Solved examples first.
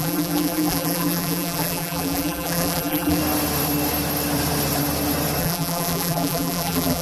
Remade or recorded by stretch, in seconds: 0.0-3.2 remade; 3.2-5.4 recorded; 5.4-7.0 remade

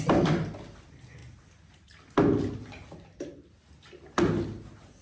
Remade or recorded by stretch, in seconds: 0.0-5.0 recorded

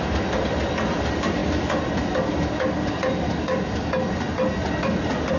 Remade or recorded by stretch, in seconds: 0.0-5.4 recorded

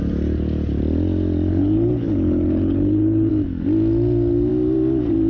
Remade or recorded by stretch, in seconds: 0.0-1.5 recorded; 1.5-3.3 remade; 3.3-5.3 recorded

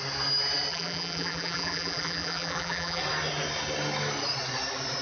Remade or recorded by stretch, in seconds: 0.0-0.7 recorded; 0.7-3.0 remade; 3.0-5.0 recorded

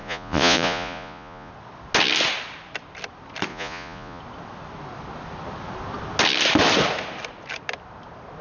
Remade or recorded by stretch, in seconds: 0.0-1.5 remade; 1.5-3.5 recorded; 3.5-4.2 remade; 4.2-8.4 recorded